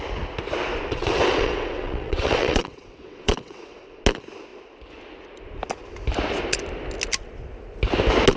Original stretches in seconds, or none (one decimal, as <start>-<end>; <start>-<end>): 0.0-0.9; 4.0-8.4